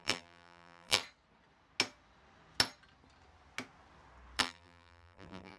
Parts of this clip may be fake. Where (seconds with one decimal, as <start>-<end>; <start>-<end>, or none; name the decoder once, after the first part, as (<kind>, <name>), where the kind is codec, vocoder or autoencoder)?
0.0-1.0 (vocoder, BigVGAN v2); 4.4-5.6